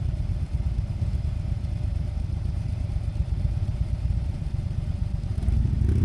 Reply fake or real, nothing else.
fake